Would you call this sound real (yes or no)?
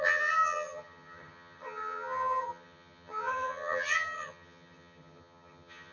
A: no